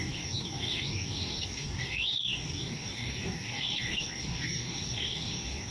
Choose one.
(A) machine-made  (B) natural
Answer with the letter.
A